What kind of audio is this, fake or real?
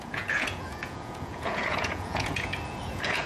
fake